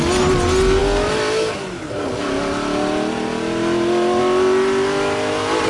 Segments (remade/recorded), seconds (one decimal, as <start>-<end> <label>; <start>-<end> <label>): 0.0-5.7 recorded